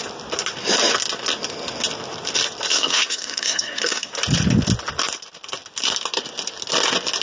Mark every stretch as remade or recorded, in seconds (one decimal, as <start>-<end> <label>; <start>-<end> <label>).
0.0-2.7 recorded; 2.7-4.1 remade; 4.1-7.2 recorded